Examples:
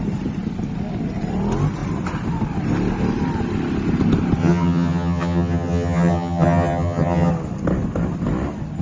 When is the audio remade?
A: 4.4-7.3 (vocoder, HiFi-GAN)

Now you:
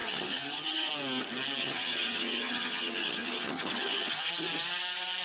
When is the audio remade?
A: 0.0-0.9 (vocoder, HiFi-GAN); 1.6-4.3